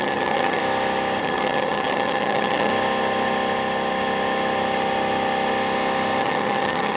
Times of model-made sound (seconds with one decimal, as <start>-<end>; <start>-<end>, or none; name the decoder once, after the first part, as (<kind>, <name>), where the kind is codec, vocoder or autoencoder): 0.0-0.6 (vocoder, HiFi-GAN); 1.2-2.7; 6.2-7.0